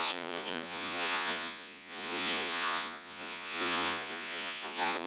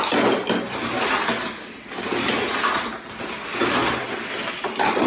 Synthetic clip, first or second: first